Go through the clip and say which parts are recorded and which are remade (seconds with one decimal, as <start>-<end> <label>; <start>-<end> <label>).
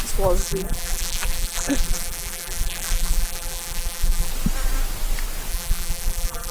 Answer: 0.0-0.4 recorded; 0.4-4.3 remade; 4.3-5.5 recorded; 5.5-6.5 remade